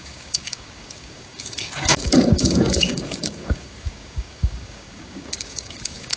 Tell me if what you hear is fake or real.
fake